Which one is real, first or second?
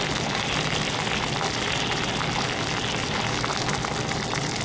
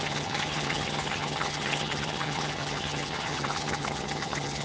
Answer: first